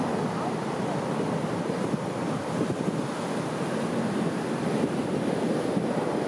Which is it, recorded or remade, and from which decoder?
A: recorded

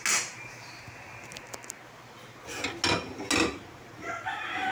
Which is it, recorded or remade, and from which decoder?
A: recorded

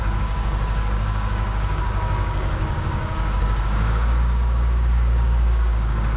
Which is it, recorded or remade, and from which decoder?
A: remade, codec, DAC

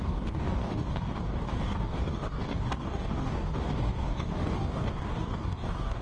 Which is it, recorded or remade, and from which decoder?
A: remade, codec, DAC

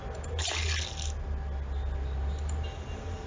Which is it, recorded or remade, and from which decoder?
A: recorded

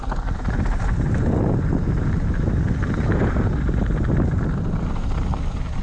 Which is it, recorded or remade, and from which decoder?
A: recorded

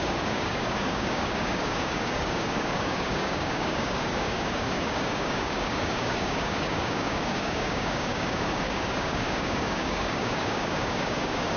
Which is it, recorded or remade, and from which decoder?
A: remade, codec, DAC